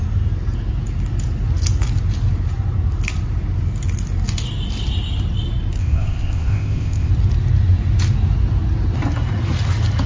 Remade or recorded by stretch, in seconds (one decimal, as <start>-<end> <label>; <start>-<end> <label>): 0.0-5.8 recorded; 5.8-7.1 remade; 7.1-10.1 recorded

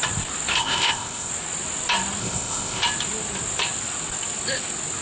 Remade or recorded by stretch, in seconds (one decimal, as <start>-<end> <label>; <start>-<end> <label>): 0.0-0.6 recorded; 0.6-1.3 remade; 1.3-2.2 recorded; 2.2-2.8 remade; 2.8-5.0 recorded